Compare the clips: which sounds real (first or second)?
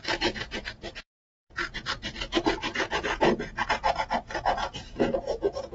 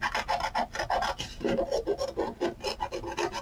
second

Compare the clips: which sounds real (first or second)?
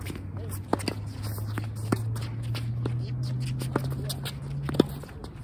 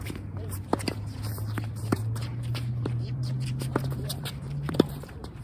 first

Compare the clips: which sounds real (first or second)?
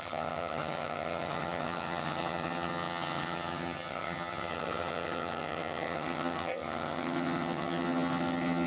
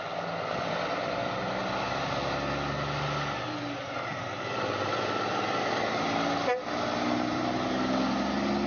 second